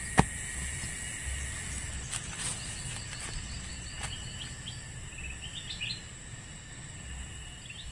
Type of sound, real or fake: real